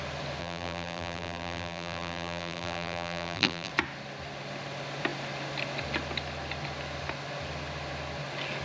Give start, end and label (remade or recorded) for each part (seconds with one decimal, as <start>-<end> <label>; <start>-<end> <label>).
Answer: 0.0-0.4 recorded; 0.4-3.7 remade; 3.7-8.6 recorded